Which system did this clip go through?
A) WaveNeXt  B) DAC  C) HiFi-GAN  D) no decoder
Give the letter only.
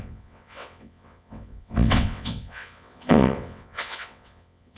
A